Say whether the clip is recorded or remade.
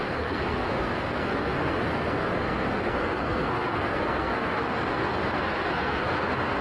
remade